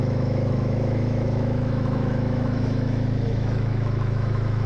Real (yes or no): no